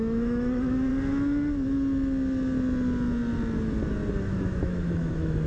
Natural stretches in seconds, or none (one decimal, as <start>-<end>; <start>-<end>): 0.9-4.2

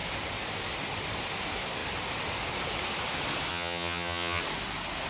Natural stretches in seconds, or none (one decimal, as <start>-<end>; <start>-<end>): 0.0-3.5; 4.4-5.1

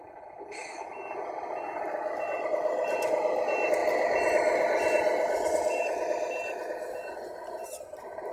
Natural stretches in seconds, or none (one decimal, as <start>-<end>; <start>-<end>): 0.0-8.3

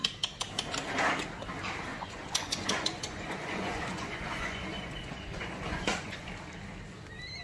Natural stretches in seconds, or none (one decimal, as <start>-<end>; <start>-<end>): 0.0-1.9; 6.3-7.4

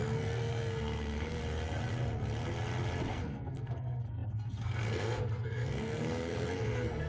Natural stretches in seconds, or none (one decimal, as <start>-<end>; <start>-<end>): 1.4-3.1